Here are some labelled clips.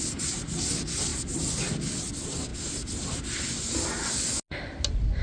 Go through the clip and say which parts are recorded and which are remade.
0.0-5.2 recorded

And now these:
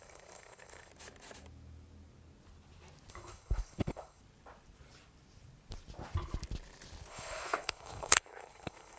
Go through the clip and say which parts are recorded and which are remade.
0.0-0.9 remade; 0.9-3.1 recorded; 3.1-4.2 remade; 4.2-7.1 recorded; 7.1-9.0 remade

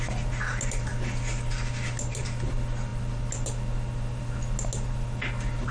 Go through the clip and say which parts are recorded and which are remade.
0.0-5.7 recorded